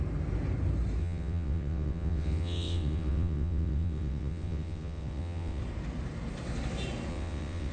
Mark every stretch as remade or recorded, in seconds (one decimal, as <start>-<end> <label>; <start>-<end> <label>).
0.0-1.0 recorded; 1.0-5.6 remade; 5.6-7.1 recorded; 7.1-7.7 remade